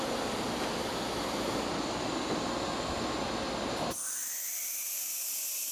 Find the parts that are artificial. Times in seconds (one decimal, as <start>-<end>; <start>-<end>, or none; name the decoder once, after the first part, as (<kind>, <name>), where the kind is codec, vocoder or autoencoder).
0.8-3.1 (vocoder, BigVGAN v2); 4.2-4.7